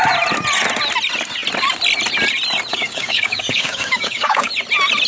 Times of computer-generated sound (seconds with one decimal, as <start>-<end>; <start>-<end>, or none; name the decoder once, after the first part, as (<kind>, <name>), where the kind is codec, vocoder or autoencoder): 2.7-4.5 (codec, DAC)